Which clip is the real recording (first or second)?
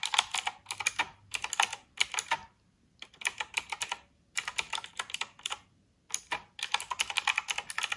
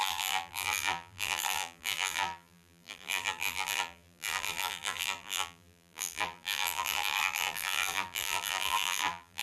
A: first